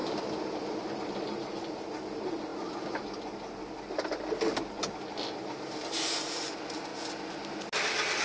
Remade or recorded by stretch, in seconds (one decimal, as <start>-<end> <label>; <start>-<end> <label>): 0.0-8.2 recorded

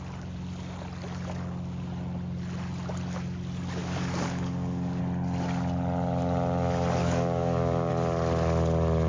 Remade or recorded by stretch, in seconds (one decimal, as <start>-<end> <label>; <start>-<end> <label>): 0.0-3.8 recorded; 3.8-5.0 remade; 5.0-7.0 recorded; 7.0-7.9 remade; 7.9-9.1 recorded

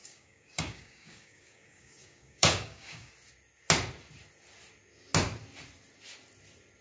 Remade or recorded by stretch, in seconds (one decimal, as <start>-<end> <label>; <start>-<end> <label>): 0.0-3.1 remade; 3.1-6.8 recorded

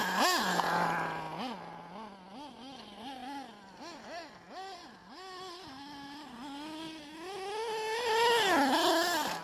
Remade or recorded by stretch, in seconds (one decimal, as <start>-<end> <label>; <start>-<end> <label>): 0.0-9.4 recorded

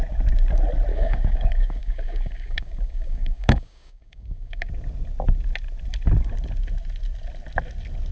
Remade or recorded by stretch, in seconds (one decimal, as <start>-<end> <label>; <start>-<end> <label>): 0.0-0.9 recorded; 0.9-4.7 remade; 4.7-8.1 recorded

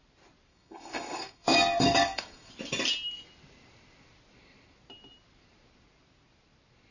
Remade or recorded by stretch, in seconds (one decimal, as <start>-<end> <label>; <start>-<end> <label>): 0.0-0.5 recorded; 0.5-2.5 remade; 2.5-6.9 recorded